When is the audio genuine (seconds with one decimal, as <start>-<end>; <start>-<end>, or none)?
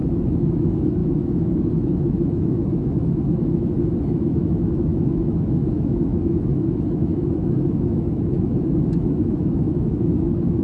none